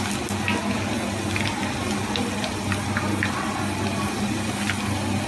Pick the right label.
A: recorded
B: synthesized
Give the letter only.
A